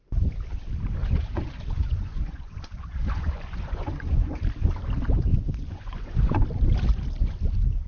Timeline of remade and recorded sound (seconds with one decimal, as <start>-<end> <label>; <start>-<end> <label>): 0.0-1.0 recorded; 1.0-4.4 remade; 4.4-5.3 recorded; 5.3-6.4 remade; 6.4-7.9 recorded